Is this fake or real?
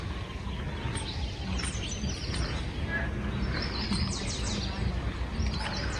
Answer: real